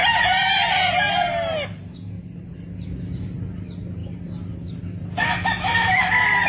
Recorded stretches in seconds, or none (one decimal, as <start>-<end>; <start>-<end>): 1.3-6.5